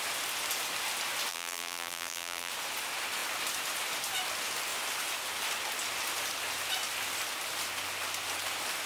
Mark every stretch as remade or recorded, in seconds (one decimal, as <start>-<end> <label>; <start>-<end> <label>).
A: 0.0-1.3 recorded; 1.3-2.5 remade; 2.5-8.9 recorded